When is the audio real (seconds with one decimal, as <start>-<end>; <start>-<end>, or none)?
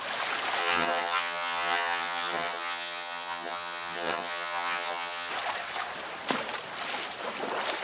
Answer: 0.0-0.6; 5.3-7.8